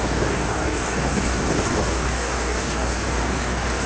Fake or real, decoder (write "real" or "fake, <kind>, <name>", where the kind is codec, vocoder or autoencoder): fake, codec, DAC